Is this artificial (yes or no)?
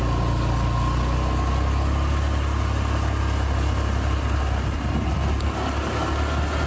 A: no